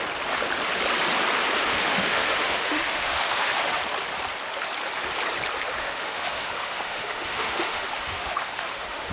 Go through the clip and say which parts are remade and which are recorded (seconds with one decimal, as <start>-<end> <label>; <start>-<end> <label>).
0.0-1.6 recorded; 1.6-3.8 remade; 3.8-5.8 recorded; 5.8-9.1 remade